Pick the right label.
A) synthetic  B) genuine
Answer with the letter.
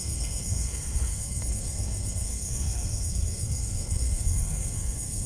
A